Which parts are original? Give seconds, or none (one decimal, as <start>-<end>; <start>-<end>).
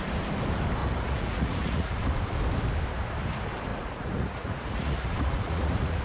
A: 0.0-0.8; 2.1-3.7